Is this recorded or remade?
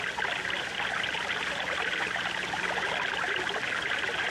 recorded